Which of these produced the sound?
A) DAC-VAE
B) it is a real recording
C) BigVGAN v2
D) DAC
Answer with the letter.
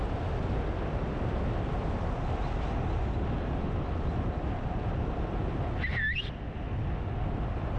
B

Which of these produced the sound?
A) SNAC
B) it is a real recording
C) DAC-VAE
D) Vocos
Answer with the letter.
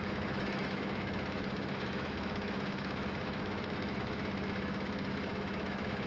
C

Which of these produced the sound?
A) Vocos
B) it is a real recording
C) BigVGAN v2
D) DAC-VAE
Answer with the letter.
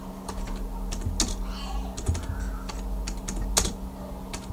B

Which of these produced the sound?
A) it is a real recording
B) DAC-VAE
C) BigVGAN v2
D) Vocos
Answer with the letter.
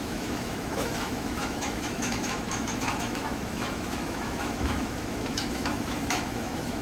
B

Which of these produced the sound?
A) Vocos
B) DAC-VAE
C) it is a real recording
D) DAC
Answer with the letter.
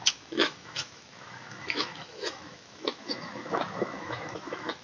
B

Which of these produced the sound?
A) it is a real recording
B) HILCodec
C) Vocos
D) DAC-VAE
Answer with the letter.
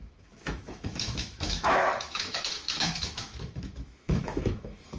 D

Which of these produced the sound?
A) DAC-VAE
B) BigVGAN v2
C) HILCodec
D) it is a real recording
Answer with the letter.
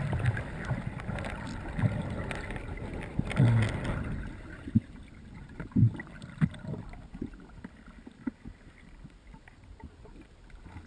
D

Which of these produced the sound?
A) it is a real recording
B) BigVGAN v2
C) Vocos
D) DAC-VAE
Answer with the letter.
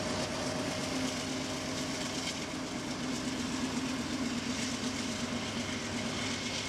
A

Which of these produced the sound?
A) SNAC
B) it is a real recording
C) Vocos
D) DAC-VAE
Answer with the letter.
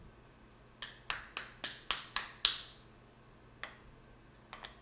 B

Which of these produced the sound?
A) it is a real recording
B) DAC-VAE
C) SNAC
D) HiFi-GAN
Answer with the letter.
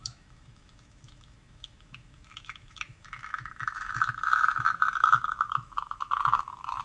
B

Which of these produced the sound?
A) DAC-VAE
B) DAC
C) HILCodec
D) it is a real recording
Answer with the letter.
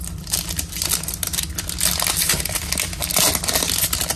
D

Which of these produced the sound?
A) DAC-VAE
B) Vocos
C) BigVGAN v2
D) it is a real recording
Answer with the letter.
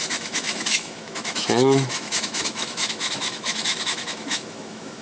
A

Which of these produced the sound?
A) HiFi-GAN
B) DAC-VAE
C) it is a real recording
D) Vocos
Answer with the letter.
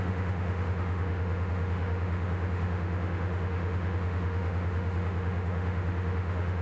B